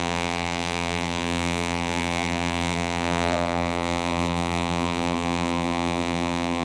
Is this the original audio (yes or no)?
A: no